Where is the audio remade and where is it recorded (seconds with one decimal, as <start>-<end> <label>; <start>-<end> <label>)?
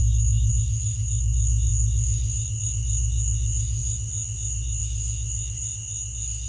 0.0-0.5 remade; 0.5-6.5 recorded